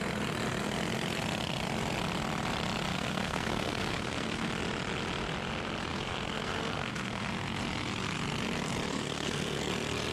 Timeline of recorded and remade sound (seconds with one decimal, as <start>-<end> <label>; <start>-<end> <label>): 0.0-2.9 recorded; 2.9-4.5 remade; 4.5-5.9 recorded; 5.9-7.3 remade; 7.3-8.9 recorded; 8.9-9.7 remade; 9.7-10.1 recorded